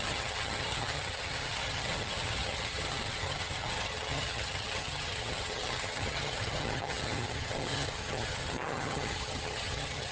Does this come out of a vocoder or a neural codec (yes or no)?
yes